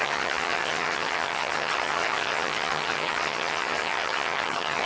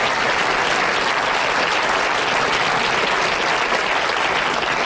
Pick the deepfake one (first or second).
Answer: first